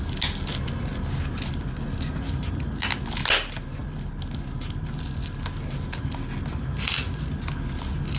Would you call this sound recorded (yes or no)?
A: yes